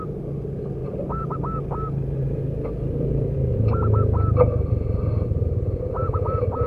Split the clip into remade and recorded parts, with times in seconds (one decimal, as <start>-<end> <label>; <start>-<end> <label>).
0.0-6.7 recorded